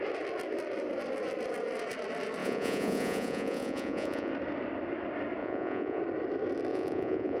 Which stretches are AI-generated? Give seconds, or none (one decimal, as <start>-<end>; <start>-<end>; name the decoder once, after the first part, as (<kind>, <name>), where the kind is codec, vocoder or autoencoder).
2.4-4.3 (vocoder, Vocos); 5.4-6.0; 6.7-7.4